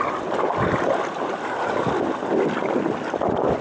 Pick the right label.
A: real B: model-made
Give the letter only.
A